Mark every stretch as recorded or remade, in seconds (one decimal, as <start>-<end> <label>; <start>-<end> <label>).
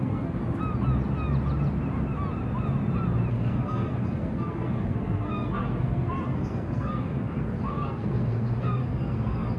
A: 0.0-0.4 remade; 0.4-3.3 recorded; 3.3-9.6 remade